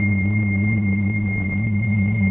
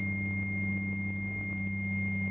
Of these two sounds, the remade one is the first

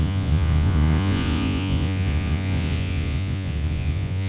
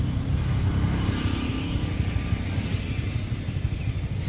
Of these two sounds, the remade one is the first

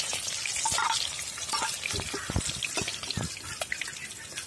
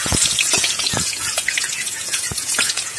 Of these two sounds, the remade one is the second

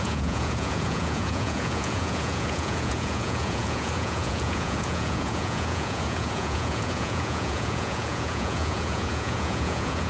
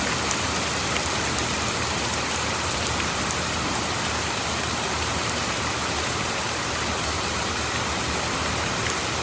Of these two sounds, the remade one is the first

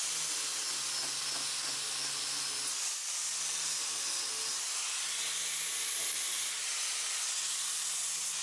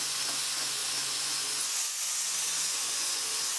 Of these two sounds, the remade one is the second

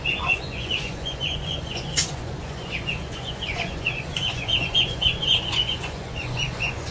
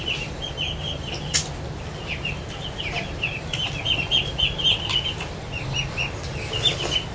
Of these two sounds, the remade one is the first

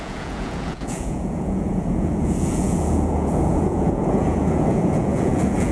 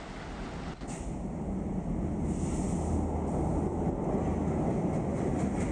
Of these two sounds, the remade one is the first